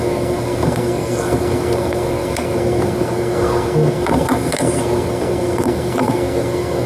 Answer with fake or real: fake